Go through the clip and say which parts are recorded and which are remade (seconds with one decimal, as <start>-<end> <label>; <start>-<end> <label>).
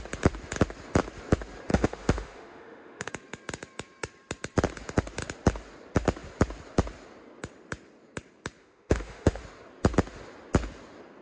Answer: 0.0-1.7 recorded; 1.7-3.1 remade; 3.1-8.6 recorded; 8.6-9.4 remade; 9.4-11.2 recorded